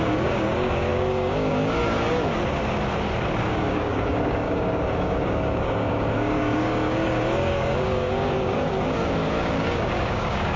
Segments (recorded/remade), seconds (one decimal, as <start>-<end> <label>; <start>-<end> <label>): 0.0-2.3 remade; 2.3-3.4 recorded; 3.4-10.6 remade

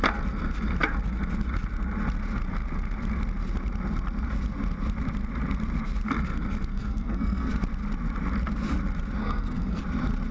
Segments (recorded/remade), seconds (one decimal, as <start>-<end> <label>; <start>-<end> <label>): 0.0-6.7 recorded; 6.7-7.5 remade; 7.5-9.2 recorded; 9.2-9.8 remade; 9.8-10.3 recorded

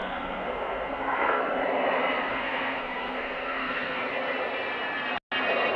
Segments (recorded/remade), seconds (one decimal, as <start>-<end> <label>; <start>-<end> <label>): 0.0-1.4 remade; 1.4-2.3 recorded; 2.3-4.0 remade; 4.0-5.8 recorded

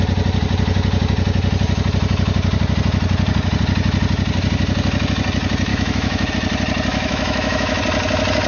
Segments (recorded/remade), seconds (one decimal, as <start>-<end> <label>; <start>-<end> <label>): 0.0-5.7 recorded; 5.7-6.3 remade; 6.3-6.9 recorded; 6.9-7.8 remade; 7.8-8.5 recorded